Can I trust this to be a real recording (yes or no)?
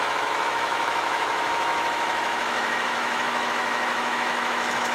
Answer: no